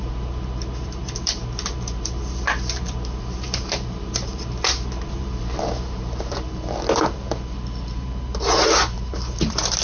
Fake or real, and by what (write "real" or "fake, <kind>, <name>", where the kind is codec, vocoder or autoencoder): fake, vocoder, BigVGAN v2